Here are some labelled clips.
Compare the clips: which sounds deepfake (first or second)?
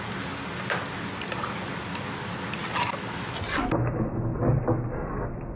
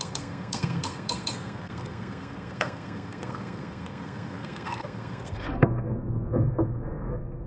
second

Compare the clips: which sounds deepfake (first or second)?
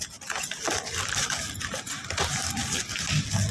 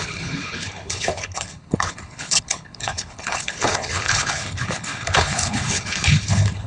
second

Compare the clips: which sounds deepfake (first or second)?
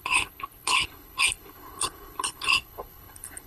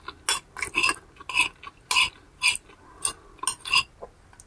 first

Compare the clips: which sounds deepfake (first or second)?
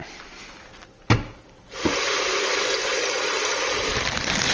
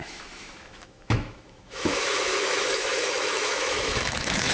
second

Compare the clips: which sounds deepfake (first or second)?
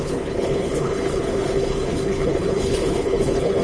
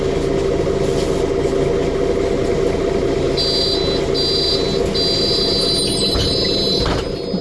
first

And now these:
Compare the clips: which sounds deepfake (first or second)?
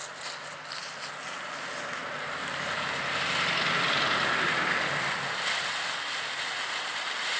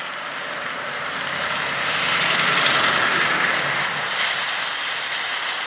second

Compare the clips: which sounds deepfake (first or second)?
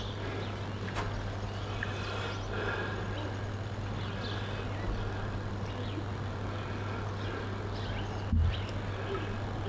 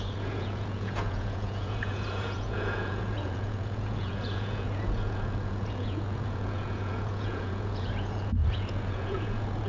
second